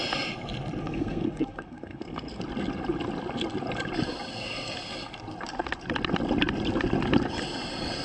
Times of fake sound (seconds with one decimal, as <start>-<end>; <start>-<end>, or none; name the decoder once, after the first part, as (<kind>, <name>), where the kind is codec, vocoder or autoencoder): 0.8-2.4 (codec, SNAC)